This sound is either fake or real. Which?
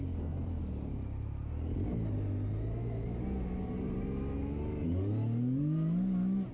real